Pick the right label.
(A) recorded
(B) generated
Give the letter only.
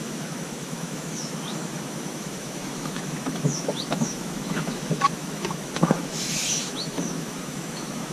B